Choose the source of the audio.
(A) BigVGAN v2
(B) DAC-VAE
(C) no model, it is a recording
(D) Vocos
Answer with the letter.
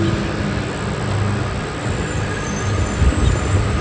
C